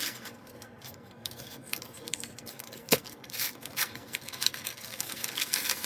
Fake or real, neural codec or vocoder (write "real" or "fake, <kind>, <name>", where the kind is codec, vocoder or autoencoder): fake, codec, SNAC